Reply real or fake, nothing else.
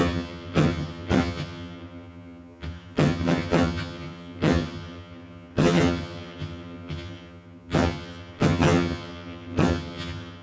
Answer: fake